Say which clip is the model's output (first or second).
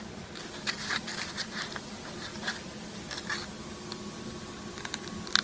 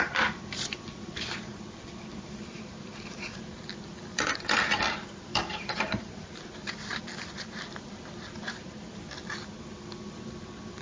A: second